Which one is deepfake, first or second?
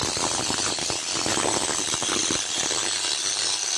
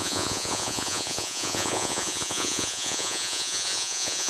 second